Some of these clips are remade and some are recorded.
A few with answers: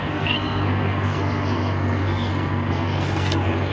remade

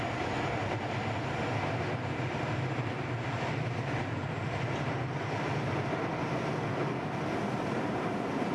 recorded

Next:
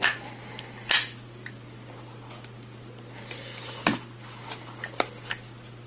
recorded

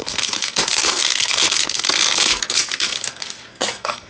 remade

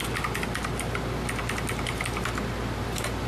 recorded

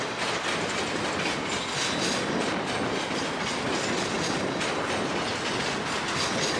recorded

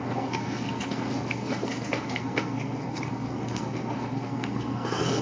remade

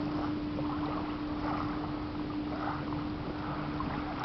recorded